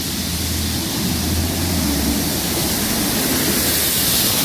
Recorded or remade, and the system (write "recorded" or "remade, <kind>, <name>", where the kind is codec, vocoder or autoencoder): recorded